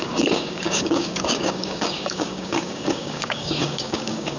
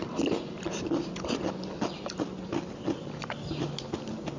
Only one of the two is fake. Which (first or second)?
first